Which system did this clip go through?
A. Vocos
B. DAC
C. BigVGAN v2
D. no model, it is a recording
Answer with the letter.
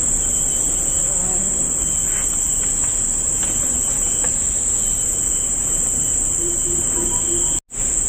D